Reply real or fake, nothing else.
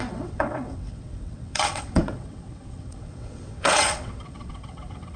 fake